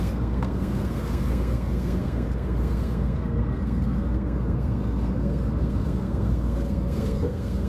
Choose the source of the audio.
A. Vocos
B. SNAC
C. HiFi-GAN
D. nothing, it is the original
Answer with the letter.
B